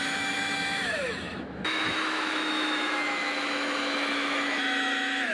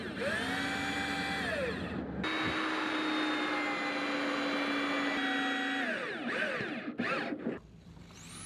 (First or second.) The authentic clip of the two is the second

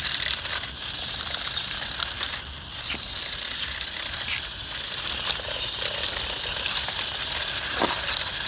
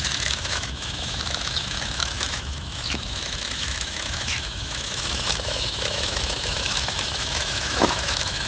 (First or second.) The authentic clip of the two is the first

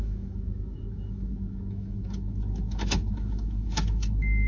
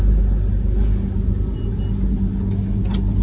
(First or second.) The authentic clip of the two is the second